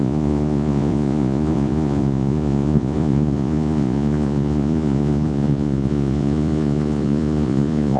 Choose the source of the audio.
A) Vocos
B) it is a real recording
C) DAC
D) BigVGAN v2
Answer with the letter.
A